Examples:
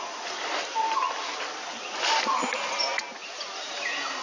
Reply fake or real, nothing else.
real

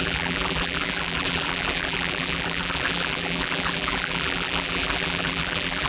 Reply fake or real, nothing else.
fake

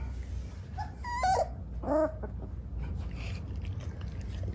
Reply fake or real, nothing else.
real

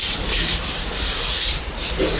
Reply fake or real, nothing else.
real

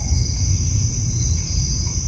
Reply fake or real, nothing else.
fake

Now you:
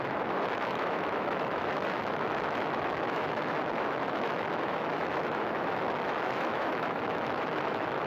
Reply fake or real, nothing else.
fake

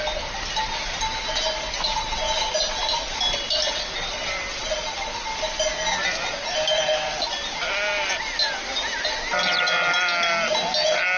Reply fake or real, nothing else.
real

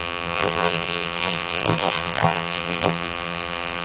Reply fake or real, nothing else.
fake